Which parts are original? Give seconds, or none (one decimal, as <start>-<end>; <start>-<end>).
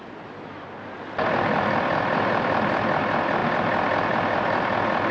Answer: 0.0-5.1